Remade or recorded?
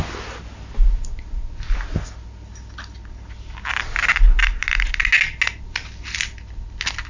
recorded